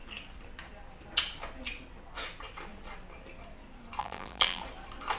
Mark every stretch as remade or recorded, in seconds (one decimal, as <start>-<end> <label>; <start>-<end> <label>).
0.0-4.0 recorded; 4.0-4.6 remade; 4.6-5.2 recorded